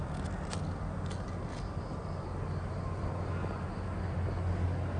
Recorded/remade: recorded